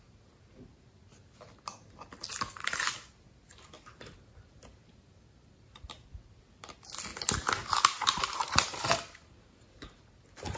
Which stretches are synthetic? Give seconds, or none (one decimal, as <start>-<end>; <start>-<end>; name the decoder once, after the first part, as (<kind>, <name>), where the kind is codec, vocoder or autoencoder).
none